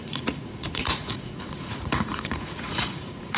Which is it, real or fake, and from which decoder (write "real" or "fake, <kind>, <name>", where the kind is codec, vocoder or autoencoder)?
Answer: fake, vocoder, Vocos